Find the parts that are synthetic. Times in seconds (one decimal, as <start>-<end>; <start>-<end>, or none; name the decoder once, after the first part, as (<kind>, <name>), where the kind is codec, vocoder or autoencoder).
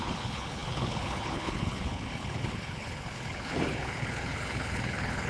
0.0-5.3 (codec, HILCodec)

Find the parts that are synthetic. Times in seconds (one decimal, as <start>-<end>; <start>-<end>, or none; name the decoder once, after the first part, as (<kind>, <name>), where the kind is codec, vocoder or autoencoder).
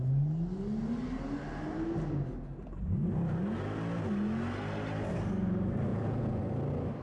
5.9-6.4 (vocoder, Vocos)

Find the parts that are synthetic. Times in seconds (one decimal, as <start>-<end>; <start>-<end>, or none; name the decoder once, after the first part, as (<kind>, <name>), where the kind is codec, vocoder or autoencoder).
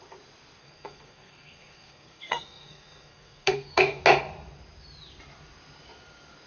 0.6-4.0 (codec, SNAC)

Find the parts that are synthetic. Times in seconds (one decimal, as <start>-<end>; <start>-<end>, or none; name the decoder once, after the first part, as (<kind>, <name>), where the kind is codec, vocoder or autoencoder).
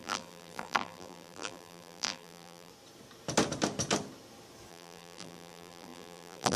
0.0-2.7 (vocoder, BigVGAN v2); 4.7-6.6